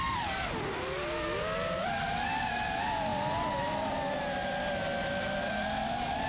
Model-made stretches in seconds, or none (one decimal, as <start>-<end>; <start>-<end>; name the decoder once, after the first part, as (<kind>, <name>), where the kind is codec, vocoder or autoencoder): none